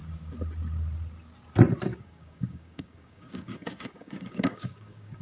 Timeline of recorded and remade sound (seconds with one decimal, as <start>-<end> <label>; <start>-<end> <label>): 0.0-1.9 recorded; 1.9-5.2 remade